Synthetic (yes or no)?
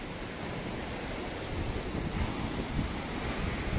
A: no